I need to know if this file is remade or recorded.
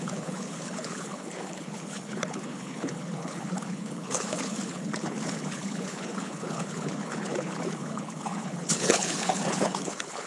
remade